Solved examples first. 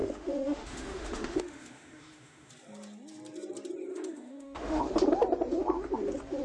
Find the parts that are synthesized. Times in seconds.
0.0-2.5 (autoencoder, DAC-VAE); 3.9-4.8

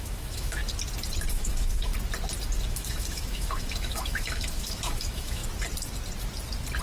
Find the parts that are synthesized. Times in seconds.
0.0-0.6 (autoencoder, DAC-VAE); 1.3-1.9; 2.7-5.4

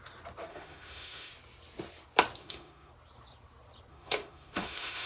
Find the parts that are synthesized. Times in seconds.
0.5-1.3 (autoencoder, DAC-VAE); 2.4-2.9; 3.9-5.1

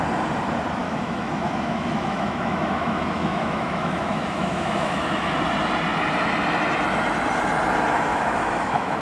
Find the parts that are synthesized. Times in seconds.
0.8-5.4 (autoencoder, DAC-VAE); 8.1-9.0

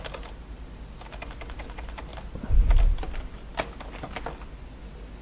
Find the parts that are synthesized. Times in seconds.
none

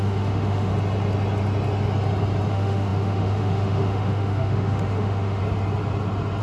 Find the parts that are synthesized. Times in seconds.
0.0-0.7 (autoencoder, DAC-VAE); 2.5-5.4

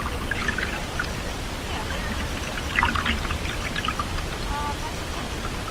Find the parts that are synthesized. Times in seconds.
none